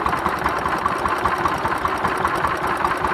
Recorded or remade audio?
recorded